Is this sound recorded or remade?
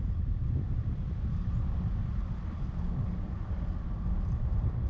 recorded